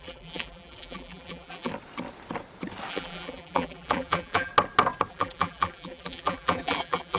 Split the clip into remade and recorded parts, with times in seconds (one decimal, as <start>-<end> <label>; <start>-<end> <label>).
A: 0.0-1.7 remade; 1.7-2.9 recorded; 2.9-4.5 remade; 4.5-5.1 recorded; 5.1-7.2 remade